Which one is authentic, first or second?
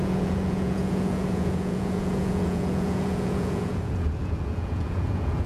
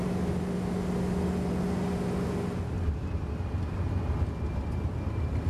second